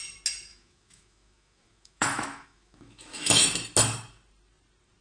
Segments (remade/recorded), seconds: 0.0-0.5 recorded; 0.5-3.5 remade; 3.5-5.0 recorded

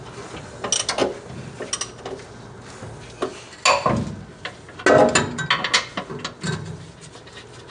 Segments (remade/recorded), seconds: 0.0-7.7 recorded

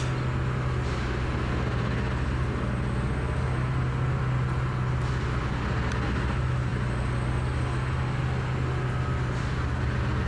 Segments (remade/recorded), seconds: 0.0-10.3 recorded

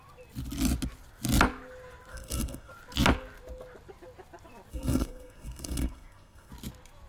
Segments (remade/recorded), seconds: 0.0-2.1 recorded; 2.1-2.7 remade; 2.7-4.7 recorded; 4.7-6.5 remade; 6.5-7.1 recorded

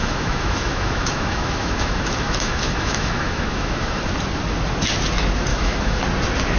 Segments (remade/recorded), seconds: 0.0-4.0 remade; 4.0-5.5 recorded; 5.5-6.0 remade; 6.0-6.6 recorded

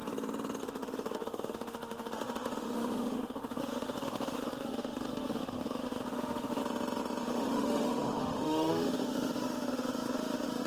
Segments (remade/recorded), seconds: 0.0-0.6 recorded; 0.6-6.6 remade; 6.6-7.2 recorded; 7.2-10.7 remade

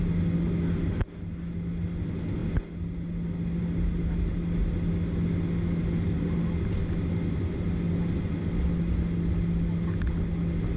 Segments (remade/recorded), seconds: 0.0-10.8 recorded

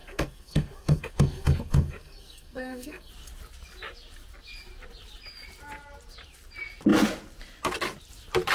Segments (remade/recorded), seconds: 0.0-3.1 remade; 3.1-8.5 recorded